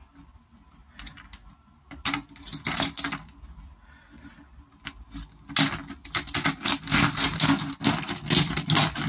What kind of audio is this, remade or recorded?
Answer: recorded